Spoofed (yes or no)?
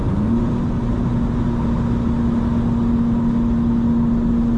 no